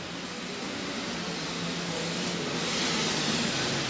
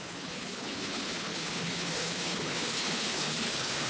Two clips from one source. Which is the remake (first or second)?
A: second